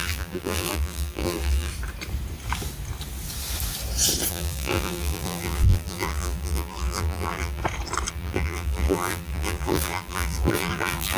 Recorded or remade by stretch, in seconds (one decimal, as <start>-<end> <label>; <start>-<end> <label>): 0.0-1.7 remade; 1.7-4.3 recorded; 4.3-7.6 remade; 7.6-8.1 recorded; 8.1-11.2 remade